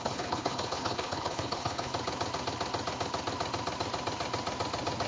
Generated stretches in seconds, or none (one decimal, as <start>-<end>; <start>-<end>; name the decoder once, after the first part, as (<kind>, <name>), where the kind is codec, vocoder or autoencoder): 0.0-1.9 (codec, HILCodec)